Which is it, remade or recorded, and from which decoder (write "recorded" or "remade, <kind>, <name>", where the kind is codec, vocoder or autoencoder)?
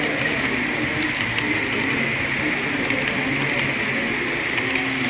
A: recorded